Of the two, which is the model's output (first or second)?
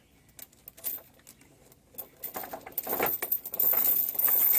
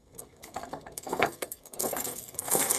second